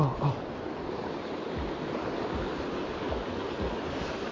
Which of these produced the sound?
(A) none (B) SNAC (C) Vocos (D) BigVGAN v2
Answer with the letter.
A